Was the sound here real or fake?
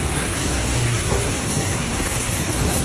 fake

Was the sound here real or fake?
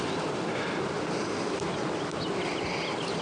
real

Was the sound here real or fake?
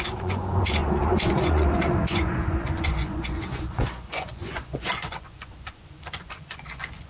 fake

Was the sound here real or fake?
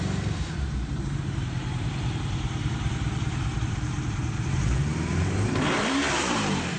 fake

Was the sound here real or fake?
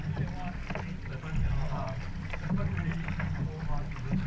real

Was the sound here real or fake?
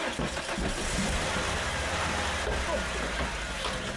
real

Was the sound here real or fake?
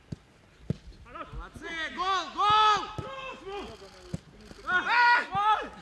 real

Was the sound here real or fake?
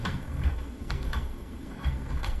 fake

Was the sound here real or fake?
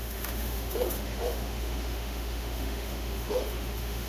fake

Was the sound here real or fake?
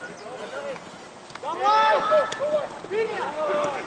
real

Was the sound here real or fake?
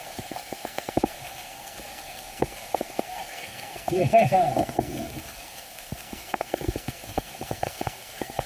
fake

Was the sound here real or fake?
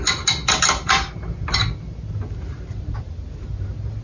real